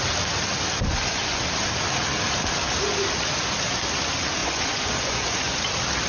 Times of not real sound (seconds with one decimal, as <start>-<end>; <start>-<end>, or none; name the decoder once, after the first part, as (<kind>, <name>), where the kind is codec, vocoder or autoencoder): 0.9-1.4 (vocoder, Vocos); 4.4-5.6